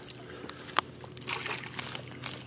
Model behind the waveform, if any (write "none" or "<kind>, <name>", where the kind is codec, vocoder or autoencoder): none